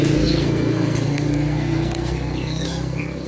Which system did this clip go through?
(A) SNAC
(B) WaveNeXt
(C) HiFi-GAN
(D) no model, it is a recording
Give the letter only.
A